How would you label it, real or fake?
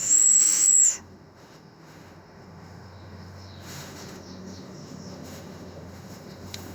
fake